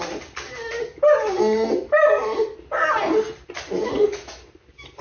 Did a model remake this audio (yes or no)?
no